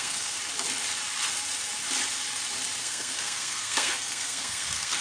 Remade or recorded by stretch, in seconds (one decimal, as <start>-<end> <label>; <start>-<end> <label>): 0.0-0.4 remade; 0.4-2.8 recorded; 2.8-5.0 remade